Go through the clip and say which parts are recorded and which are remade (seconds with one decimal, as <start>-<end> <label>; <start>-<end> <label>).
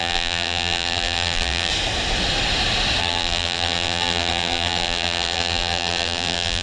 0.0-1.7 remade; 1.7-3.0 recorded; 3.0-6.6 remade